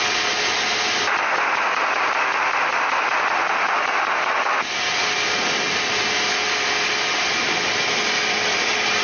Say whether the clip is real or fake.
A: real